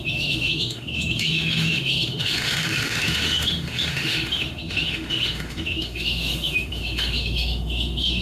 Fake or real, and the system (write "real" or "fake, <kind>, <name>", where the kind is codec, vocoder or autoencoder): fake, autoencoder, DAC-VAE